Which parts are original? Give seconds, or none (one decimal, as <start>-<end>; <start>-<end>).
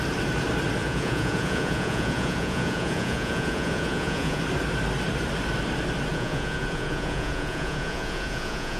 0.0-0.8; 4.4-6.1